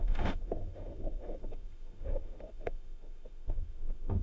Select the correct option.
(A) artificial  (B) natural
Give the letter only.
A